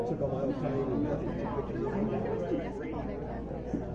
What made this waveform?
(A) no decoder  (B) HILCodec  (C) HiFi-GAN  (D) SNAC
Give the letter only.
A